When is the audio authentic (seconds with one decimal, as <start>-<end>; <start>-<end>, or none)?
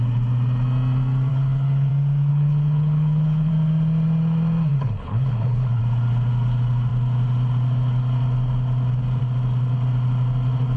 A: 0.0-1.3; 1.9-2.3; 3.5-4.7; 5.8-10.8